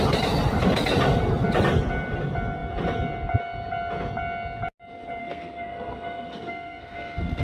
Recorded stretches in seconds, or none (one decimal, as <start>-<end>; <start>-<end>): 0.0-5.2